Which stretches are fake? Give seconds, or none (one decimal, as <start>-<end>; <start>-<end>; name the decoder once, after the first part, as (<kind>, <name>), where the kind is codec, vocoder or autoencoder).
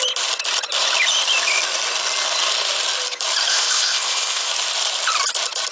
3.5-4.5 (codec, ZipCodec)